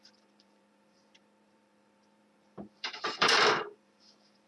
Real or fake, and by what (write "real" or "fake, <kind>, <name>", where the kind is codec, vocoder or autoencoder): fake, vocoder, BigVGAN v2